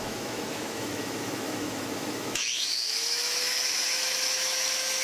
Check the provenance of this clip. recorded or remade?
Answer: remade